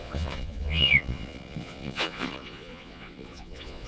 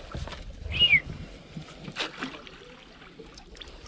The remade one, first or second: first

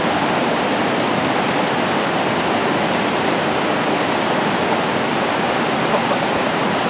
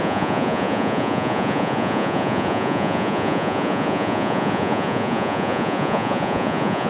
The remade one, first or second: second